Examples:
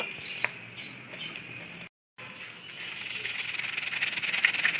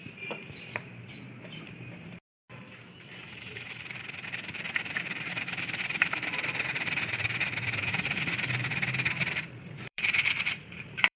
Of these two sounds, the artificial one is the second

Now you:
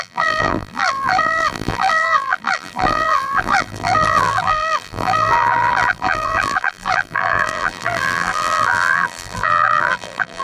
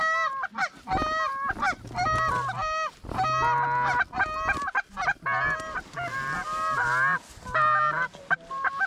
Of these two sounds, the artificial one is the first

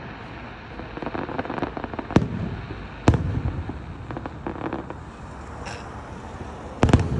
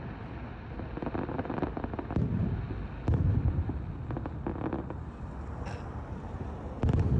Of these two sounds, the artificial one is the second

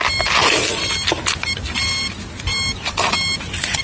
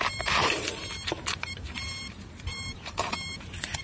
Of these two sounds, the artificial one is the second